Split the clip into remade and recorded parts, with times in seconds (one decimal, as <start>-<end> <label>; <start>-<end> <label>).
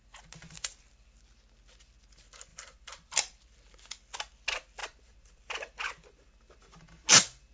0.0-2.5 recorded; 2.5-3.4 remade; 3.4-4.8 recorded; 4.8-6.6 remade; 6.6-7.5 recorded